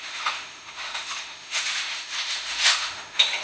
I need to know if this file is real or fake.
fake